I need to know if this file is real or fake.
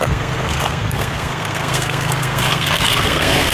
fake